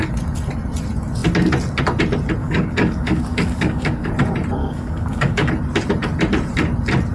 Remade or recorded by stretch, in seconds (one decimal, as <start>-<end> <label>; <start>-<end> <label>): 0.0-2.4 recorded; 2.4-4.1 remade; 4.1-4.6 recorded; 4.6-5.5 remade; 5.5-7.1 recorded